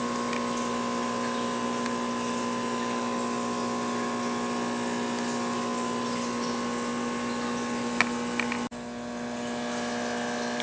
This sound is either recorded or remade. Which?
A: recorded